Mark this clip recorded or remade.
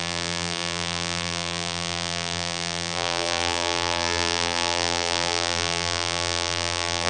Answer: remade